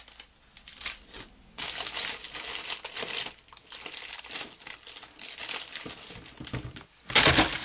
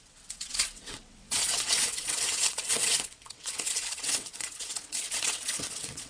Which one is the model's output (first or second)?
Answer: second